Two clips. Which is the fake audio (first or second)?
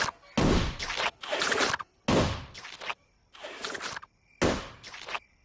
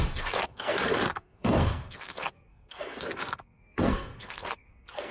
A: second